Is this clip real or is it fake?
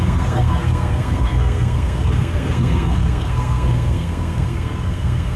fake